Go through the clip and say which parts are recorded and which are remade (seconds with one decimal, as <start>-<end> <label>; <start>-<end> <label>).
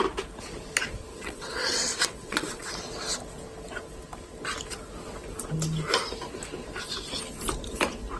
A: 0.0-1.1 recorded; 1.1-2.7 remade; 2.7-8.2 recorded